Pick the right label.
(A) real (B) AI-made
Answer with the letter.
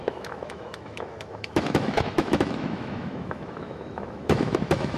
B